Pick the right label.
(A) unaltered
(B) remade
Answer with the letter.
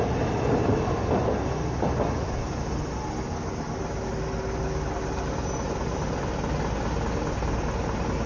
A